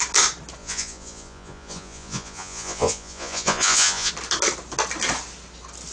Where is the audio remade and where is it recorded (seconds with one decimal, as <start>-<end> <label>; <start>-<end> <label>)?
0.0-0.6 recorded; 0.6-4.1 remade; 4.1-5.9 recorded